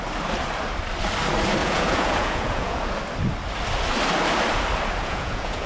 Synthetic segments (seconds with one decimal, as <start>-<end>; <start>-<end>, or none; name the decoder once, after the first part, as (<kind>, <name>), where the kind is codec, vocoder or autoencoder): 1.6-2.8 (vocoder, Vocos); 5.0-5.7